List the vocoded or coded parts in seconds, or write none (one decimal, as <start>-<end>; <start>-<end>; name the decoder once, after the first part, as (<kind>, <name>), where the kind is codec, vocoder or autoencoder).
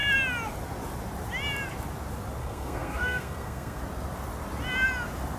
2.4-3.8 (codec, SNAC)